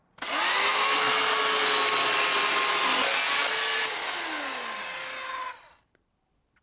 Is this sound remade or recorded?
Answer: recorded